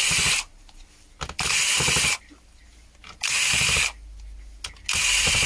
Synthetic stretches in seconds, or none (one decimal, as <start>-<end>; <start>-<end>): 0.0-2.6; 5.1-5.5

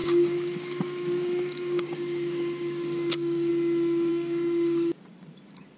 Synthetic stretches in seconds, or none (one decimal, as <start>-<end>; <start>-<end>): 0.0-3.5; 4.1-5.1

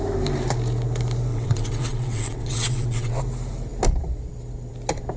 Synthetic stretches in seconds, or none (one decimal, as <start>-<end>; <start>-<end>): 1.3-3.2

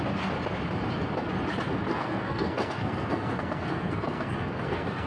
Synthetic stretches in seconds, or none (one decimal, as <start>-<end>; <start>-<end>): 1.9-5.1

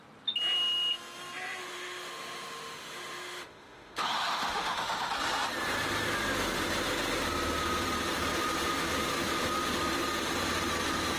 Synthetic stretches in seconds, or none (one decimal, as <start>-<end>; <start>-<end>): 1.6-5.1

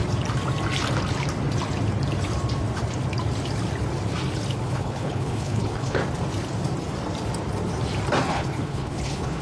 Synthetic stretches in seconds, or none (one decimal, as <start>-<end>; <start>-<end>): 4.7-6.0; 8.3-9.4